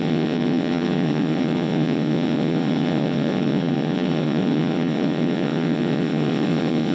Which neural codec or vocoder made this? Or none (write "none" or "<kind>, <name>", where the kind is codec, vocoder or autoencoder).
vocoder, WaveNeXt